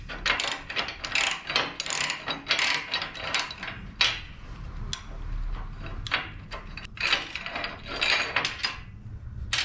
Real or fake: real